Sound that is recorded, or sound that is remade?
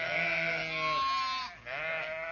recorded